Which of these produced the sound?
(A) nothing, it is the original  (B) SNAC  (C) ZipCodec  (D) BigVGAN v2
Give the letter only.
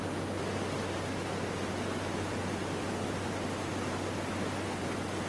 A